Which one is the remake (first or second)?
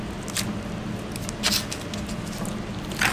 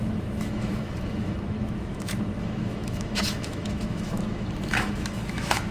second